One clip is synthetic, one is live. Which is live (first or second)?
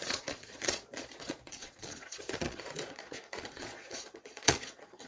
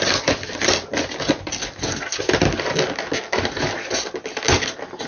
second